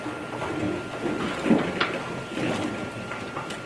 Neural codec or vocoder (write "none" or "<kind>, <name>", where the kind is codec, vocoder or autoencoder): none